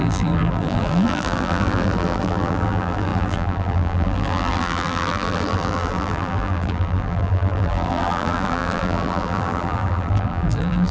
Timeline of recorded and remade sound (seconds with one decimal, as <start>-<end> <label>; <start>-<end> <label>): 0.0-10.9 remade